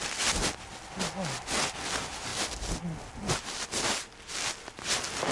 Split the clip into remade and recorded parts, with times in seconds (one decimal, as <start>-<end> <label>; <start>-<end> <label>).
0.0-5.3 recorded